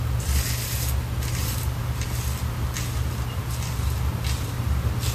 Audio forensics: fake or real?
real